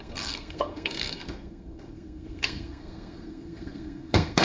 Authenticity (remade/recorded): remade